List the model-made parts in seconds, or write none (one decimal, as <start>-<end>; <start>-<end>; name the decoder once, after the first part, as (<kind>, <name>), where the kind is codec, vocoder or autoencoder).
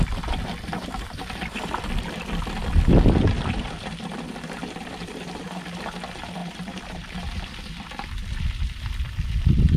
none